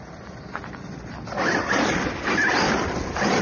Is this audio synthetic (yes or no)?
no